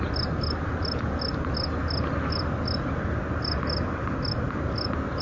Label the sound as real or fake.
real